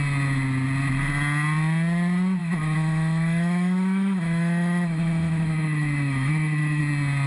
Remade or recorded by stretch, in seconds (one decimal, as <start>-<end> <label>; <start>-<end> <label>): 0.0-2.4 recorded; 2.4-6.8 remade; 6.8-7.3 recorded